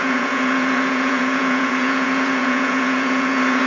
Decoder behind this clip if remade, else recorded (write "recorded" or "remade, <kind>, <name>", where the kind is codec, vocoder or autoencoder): remade, vocoder, Vocos